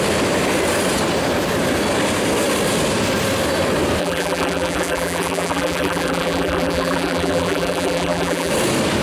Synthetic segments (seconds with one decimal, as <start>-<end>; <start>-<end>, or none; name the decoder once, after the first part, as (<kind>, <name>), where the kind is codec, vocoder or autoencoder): 4.0-8.5 (vocoder, BigVGAN v2)